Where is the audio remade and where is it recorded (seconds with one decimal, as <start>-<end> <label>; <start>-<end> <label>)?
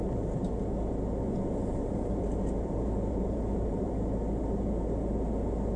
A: 0.0-1.6 recorded; 1.6-3.9 remade; 3.9-5.8 recorded